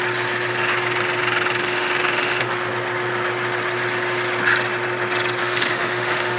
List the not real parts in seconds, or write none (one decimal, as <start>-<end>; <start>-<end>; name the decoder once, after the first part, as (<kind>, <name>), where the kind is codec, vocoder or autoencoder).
1.6-2.7 (autoencoder, DAC-VAE); 5.4-6.4